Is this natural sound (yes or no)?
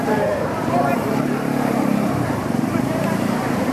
no